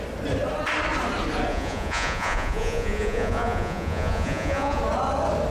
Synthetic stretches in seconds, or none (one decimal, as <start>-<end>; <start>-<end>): 1.5-4.8